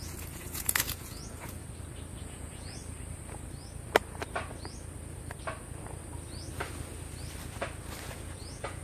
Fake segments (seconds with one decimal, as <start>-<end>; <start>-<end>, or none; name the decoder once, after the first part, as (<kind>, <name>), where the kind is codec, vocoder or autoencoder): 0.0-1.6 (vocoder, Vocos); 2.2-2.8; 8.0-8.8